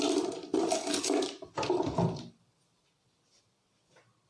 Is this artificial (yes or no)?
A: no